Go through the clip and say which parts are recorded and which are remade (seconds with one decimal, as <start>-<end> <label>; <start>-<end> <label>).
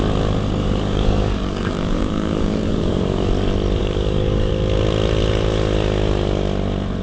0.0-0.6 recorded; 0.6-3.3 remade; 3.3-3.8 recorded; 3.8-4.5 remade; 4.5-7.0 recorded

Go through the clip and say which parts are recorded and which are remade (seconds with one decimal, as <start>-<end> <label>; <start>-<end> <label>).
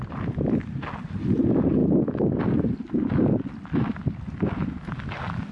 0.0-5.5 recorded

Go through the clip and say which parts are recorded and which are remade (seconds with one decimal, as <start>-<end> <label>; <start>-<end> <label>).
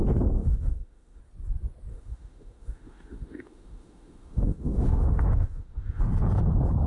0.0-0.4 recorded; 0.4-1.2 remade; 1.2-1.9 recorded; 1.9-6.0 remade; 6.0-6.9 recorded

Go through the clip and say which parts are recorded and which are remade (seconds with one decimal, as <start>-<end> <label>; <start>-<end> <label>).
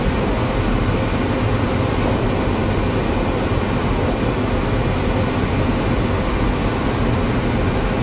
0.0-8.0 recorded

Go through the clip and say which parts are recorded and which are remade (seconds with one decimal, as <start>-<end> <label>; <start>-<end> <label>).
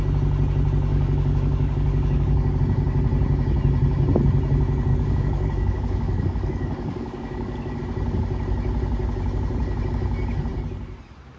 0.0-0.9 recorded; 0.9-2.6 remade; 2.6-4.9 recorded; 4.9-7.8 remade; 7.8-11.4 recorded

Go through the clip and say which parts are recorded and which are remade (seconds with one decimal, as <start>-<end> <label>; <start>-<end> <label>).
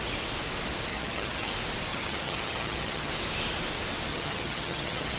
0.0-0.9 recorded; 0.9-1.5 remade; 1.5-1.9 recorded; 1.9-3.1 remade; 3.1-4.1 recorded; 4.1-5.2 remade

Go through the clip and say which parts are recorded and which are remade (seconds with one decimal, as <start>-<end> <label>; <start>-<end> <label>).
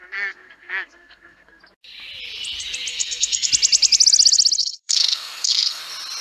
0.0-1.6 remade; 1.6-2.9 recorded; 2.9-3.5 remade; 3.5-4.6 recorded; 4.6-5.8 remade; 5.8-6.2 recorded